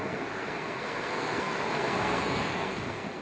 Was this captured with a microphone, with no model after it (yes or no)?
no